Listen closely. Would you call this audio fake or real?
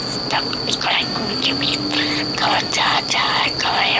real